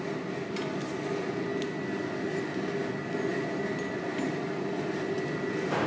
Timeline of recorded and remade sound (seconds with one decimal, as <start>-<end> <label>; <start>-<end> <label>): 0.0-5.9 recorded